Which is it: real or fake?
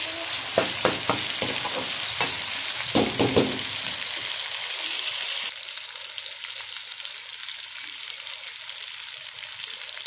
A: real